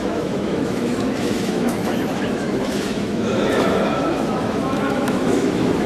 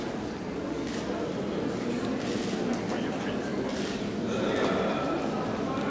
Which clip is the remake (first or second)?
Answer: first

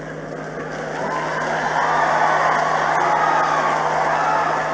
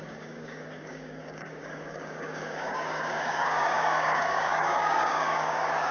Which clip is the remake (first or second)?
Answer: second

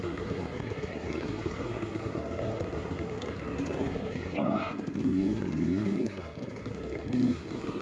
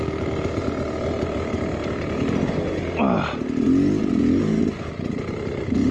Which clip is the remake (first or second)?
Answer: first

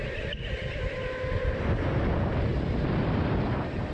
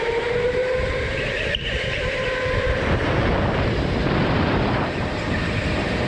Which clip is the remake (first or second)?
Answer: second